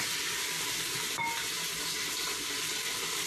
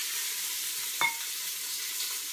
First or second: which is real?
first